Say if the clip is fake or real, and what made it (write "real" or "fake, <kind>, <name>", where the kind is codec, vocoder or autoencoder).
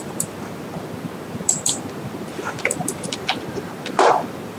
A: fake, vocoder, BigVGAN v2